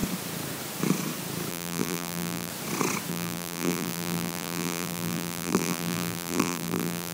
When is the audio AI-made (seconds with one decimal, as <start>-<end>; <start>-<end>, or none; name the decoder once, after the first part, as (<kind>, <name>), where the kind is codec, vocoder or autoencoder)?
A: 1.5-2.5 (vocoder, BigVGAN v2); 3.1-7.1